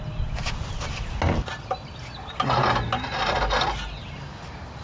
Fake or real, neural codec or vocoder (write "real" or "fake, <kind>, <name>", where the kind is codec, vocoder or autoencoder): real